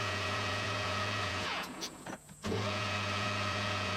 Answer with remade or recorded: remade